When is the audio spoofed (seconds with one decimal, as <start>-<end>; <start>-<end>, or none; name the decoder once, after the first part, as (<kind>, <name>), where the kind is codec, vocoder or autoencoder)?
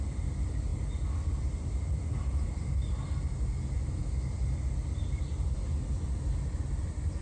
none